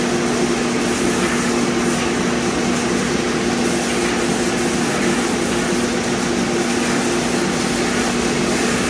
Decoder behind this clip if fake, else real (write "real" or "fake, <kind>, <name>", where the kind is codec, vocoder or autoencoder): real